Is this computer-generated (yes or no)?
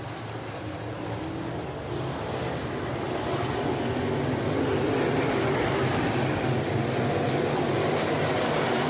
no